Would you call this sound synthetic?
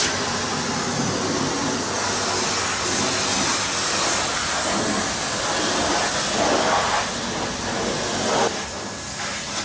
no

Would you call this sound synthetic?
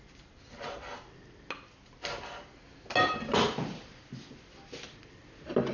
no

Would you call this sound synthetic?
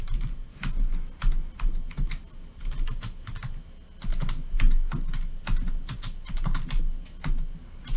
no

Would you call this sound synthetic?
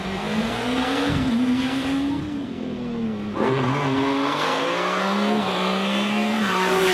yes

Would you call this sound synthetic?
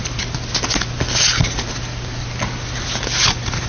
no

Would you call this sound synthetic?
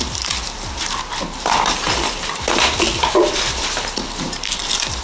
yes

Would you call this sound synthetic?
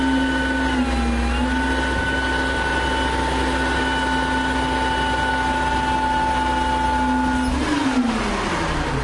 no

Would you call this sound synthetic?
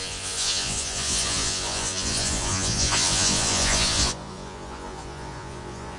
yes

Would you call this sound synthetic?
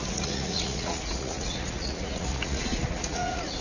yes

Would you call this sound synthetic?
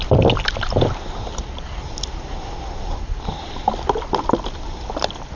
no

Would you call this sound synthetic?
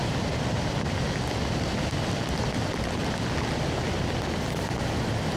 no